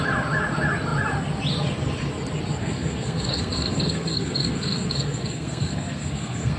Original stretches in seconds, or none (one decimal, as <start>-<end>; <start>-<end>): 0.0-2.6